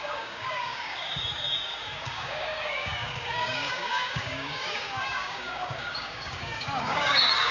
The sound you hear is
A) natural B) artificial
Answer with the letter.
B